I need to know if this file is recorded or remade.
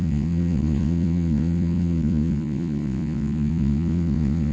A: remade